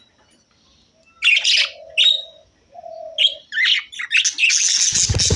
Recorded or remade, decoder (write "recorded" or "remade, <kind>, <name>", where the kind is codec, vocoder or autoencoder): recorded